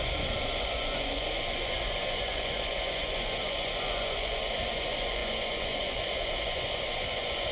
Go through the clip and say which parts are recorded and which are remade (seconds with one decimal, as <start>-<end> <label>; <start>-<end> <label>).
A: 0.0-7.5 remade